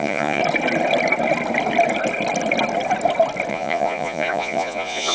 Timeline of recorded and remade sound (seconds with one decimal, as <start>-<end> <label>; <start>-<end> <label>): 0.0-0.4 remade; 0.4-3.5 recorded; 3.5-5.1 remade